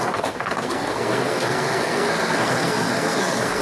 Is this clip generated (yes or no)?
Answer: yes